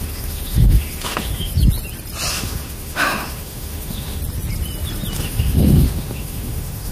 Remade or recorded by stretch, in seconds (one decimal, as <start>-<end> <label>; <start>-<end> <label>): 0.0-1.5 remade; 1.5-2.3 recorded; 2.3-4.2 remade; 4.2-5.2 recorded; 5.2-6.9 remade